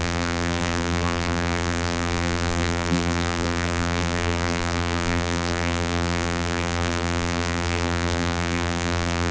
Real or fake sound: fake